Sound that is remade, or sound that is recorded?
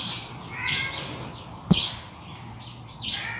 recorded